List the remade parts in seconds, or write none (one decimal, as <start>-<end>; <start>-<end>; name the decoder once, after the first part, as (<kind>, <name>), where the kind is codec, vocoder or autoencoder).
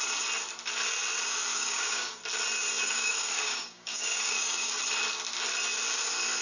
1.5-2.2 (codec, DAC); 2.8-4.8